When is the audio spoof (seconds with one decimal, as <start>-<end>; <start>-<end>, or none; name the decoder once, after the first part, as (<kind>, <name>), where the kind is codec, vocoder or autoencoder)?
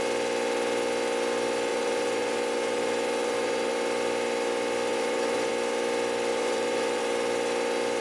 1.7-3.7 (vocoder, BigVGAN v2); 4.9-5.5; 6.3-7.0